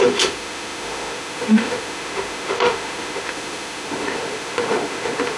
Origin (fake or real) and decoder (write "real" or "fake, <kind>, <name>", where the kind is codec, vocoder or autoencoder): fake, autoencoder, DAC-VAE